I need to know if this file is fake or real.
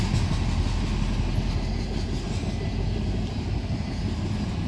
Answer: real